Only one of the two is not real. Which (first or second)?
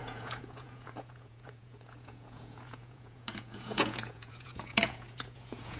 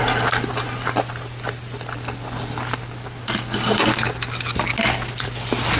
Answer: first